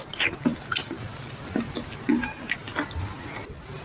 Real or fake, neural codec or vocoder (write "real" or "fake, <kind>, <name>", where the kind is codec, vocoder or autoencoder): real